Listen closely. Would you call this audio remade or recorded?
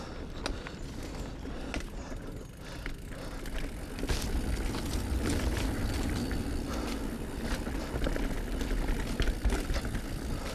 recorded